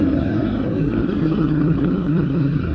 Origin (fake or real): fake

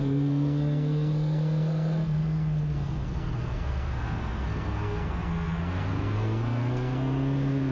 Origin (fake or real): fake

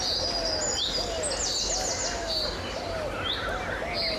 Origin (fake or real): real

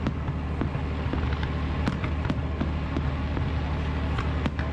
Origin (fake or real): real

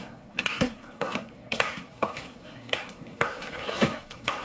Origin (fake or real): fake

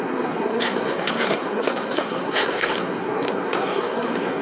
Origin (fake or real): fake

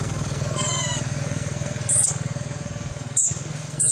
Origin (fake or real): fake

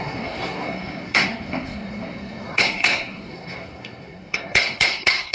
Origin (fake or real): fake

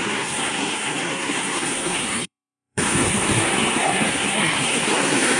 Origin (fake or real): fake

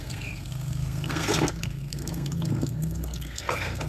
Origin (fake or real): fake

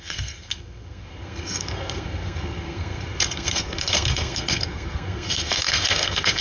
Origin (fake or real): fake